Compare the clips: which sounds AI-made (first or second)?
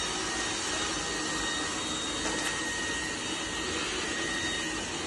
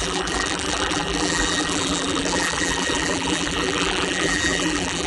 second